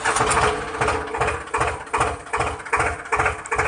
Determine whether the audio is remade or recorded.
recorded